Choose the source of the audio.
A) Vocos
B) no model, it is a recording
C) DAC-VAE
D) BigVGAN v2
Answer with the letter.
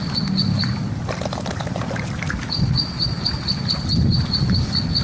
B